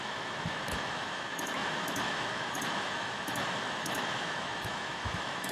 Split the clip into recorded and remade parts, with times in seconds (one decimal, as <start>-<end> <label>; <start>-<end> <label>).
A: 0.0-5.5 remade